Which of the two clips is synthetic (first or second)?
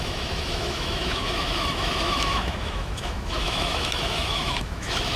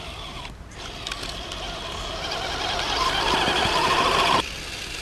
first